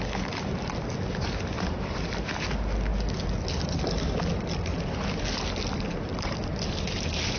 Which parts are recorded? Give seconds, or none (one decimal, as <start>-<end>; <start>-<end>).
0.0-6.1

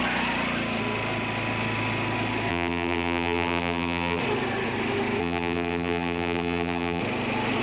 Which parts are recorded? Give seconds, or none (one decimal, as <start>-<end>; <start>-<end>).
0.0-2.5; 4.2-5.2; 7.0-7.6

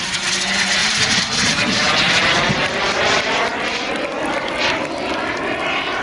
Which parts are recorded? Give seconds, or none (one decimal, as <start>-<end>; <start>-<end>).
0.0-0.8; 2.7-6.0

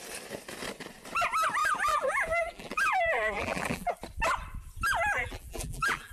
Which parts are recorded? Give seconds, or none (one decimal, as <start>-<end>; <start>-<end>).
0.0-1.6; 3.9-5.2

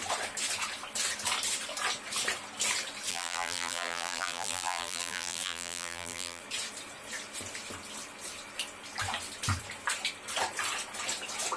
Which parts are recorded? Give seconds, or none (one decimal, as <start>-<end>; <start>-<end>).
0.0-3.1; 6.4-11.6

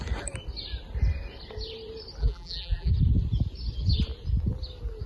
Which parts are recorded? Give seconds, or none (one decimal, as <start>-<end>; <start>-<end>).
0.0-2.2; 2.9-5.1

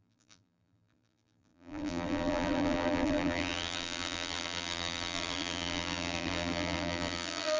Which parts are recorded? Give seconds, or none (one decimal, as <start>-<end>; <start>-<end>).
none